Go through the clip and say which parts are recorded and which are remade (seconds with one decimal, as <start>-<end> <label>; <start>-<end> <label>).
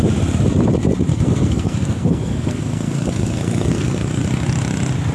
0.0-1.1 recorded; 1.1-4.2 remade; 4.2-5.1 recorded